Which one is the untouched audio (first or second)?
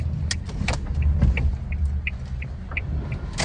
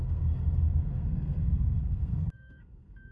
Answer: first